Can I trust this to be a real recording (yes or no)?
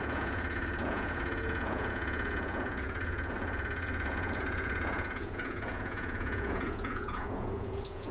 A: no